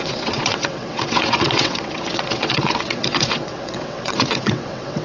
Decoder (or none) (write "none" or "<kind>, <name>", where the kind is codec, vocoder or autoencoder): vocoder, WaveNeXt